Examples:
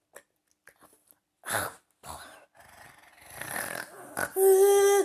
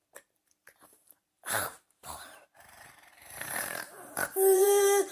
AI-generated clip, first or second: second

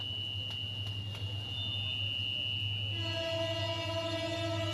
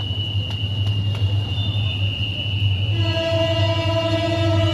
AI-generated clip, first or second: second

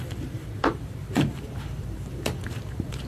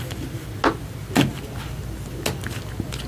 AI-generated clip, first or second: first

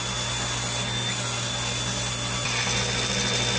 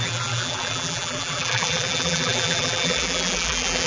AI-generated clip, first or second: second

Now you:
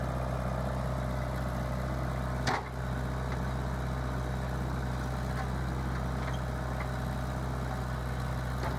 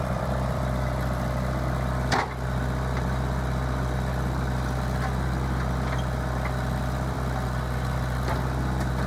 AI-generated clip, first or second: second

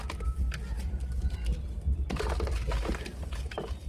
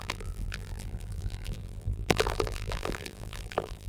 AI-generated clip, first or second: second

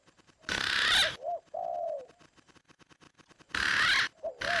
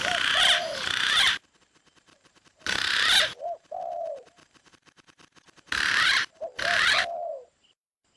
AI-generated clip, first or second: second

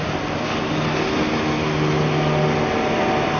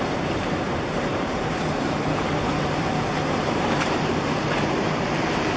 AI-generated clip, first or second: second